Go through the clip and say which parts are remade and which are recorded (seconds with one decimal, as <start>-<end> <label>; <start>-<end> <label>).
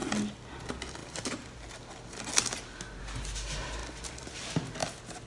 0.0-5.3 recorded